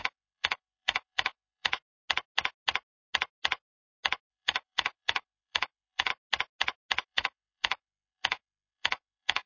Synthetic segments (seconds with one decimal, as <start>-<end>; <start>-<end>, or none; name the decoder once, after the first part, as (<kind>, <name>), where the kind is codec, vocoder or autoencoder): 0.0-1.7 (autoencoder, DAC-VAE); 4.3-6.1; 7.0-9.5